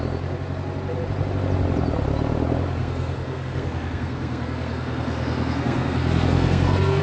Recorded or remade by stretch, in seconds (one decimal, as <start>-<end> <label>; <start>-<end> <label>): 0.0-2.8 recorded; 2.8-7.0 remade